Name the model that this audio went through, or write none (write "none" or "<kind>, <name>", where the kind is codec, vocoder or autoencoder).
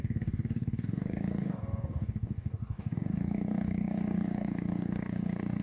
codec, DAC